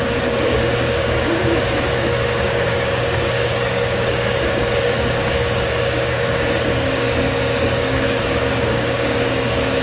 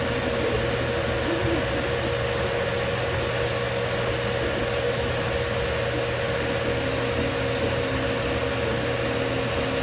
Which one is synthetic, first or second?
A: first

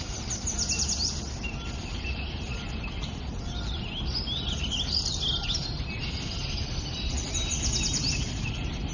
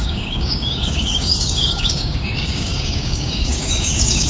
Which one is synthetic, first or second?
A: second